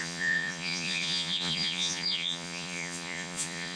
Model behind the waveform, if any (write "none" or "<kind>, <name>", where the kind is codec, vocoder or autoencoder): vocoder, Vocos